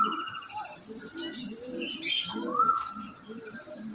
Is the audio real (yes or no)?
yes